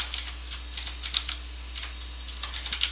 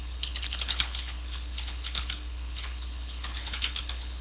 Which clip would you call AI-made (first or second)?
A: second